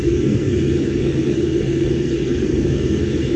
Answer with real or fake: fake